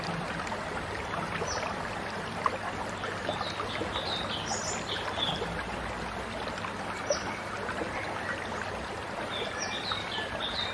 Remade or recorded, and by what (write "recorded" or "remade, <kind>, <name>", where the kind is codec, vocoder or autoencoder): recorded